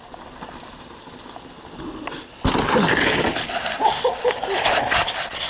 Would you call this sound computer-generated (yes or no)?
no